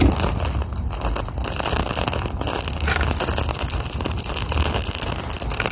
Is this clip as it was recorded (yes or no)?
yes